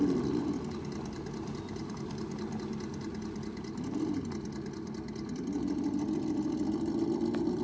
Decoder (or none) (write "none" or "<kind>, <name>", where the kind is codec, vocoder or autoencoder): none